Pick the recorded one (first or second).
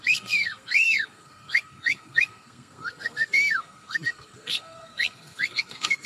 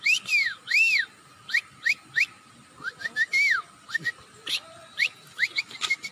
second